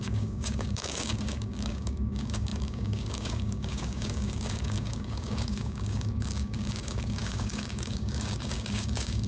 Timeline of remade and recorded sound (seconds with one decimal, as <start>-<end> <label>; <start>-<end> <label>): 0.0-9.3 remade